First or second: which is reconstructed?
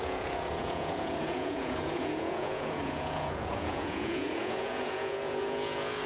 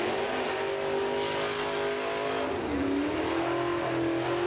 first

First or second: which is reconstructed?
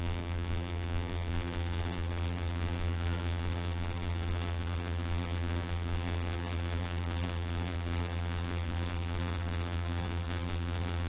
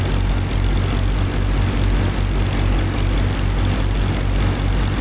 first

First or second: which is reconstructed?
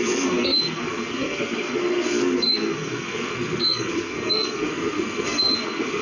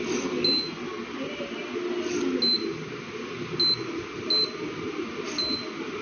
first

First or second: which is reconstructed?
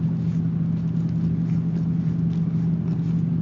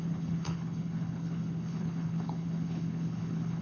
second